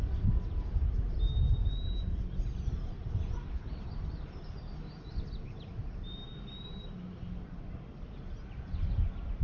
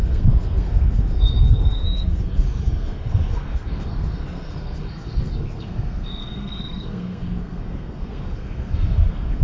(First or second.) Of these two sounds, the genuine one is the first